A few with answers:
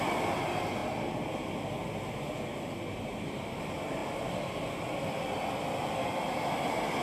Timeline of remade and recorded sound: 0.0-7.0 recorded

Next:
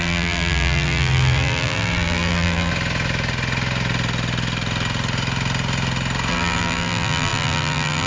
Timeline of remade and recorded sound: 0.0-2.7 remade; 2.7-6.3 recorded; 6.3-8.1 remade

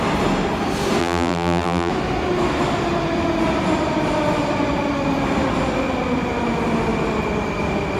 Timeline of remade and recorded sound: 0.0-1.0 recorded; 1.0-1.9 remade; 1.9-8.0 recorded

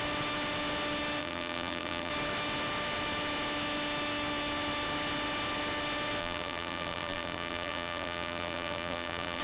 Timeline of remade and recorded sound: 0.0-1.2 recorded; 1.2-2.1 remade; 2.1-6.2 recorded; 6.2-9.4 remade

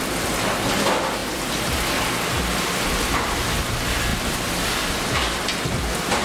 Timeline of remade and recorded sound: 0.0-1.2 recorded; 1.2-2.8 remade; 2.8-4.1 recorded; 4.1-5.4 remade; 5.4-6.2 recorded